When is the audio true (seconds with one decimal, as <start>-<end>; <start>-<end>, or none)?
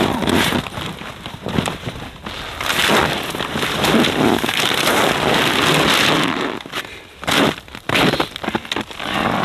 0.0-2.8; 3.3-9.4